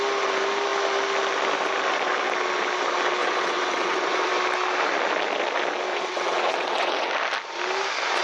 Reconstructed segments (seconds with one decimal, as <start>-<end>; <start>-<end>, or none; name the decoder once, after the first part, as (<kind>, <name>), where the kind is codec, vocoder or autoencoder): 3.2-4.3 (vocoder, WaveNeXt); 5.9-7.1